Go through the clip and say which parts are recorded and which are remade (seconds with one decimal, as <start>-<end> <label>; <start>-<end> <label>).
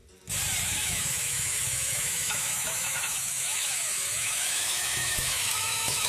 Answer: 0.0-0.6 recorded; 0.6-6.1 remade